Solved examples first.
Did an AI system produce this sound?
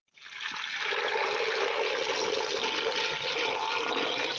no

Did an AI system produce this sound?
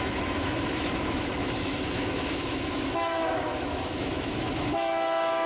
yes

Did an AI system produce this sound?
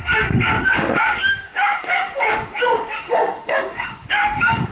yes